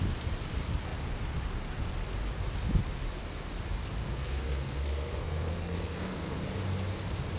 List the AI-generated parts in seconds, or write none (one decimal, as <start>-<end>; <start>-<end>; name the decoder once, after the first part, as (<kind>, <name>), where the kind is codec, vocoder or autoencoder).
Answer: 4.0-6.4 (codec, SNAC)